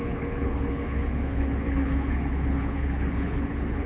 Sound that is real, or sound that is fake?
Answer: fake